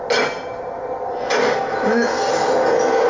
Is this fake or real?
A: real